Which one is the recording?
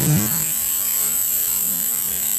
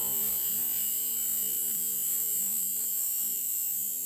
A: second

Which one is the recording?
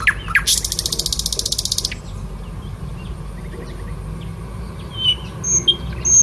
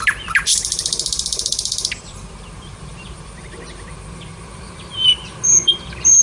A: first